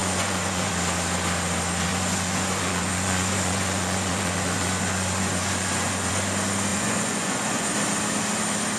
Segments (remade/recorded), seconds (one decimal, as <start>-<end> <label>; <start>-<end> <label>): 0.0-0.7 remade; 0.7-1.9 recorded; 1.9-6.1 remade; 6.1-6.7 recorded; 6.7-7.7 remade; 7.7-8.8 recorded